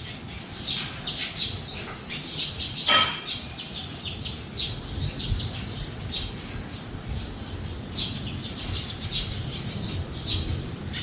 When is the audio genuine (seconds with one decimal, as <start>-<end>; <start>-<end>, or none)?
0.0-11.0